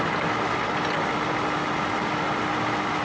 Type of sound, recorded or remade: recorded